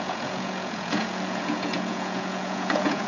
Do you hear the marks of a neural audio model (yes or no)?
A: yes